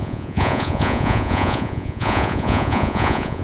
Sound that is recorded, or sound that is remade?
remade